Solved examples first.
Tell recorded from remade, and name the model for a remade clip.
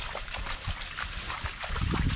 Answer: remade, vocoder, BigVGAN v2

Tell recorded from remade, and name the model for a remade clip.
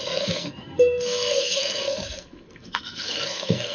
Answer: remade, codec, SNAC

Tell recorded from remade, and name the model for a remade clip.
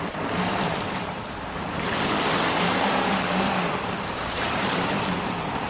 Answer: remade, vocoder, BigVGAN v2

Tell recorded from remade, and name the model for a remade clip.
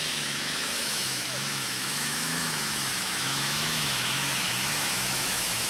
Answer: remade, autoencoder, DAC-VAE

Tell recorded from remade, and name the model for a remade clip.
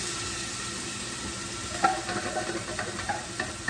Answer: recorded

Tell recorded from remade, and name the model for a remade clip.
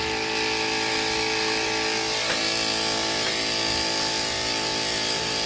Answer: recorded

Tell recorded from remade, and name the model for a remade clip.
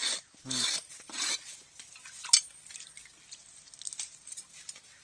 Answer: recorded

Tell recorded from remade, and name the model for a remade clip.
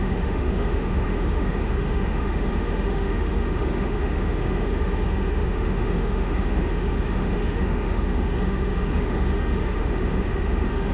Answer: remade, autoencoder, DAC-VAE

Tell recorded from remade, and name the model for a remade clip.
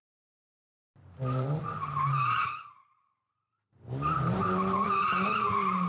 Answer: remade, vocoder, BigVGAN v2